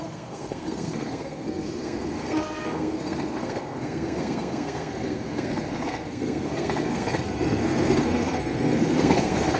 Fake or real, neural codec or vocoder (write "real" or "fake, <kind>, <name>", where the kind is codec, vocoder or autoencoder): fake, codec, SNAC